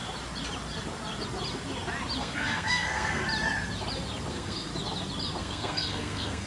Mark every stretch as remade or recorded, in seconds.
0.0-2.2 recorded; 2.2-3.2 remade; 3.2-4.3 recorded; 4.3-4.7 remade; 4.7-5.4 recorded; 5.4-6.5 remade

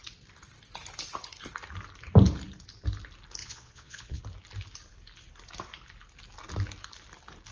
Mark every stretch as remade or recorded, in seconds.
0.0-3.4 recorded; 3.4-4.2 remade; 4.2-7.5 recorded

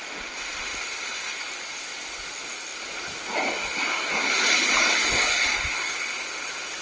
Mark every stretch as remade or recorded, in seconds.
0.0-6.8 recorded